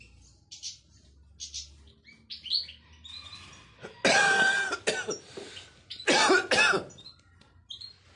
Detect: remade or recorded recorded